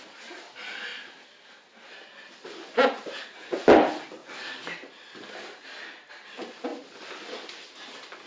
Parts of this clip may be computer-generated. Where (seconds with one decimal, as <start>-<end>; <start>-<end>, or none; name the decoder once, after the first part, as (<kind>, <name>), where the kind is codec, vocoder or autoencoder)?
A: none